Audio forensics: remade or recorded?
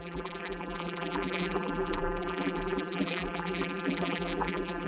remade